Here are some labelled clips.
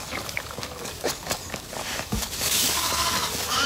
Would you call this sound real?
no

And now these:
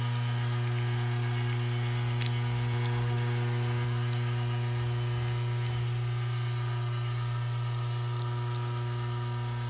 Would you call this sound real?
yes